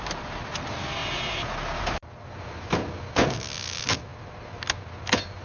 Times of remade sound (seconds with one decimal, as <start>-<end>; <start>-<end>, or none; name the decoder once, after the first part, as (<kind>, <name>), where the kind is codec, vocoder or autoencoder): none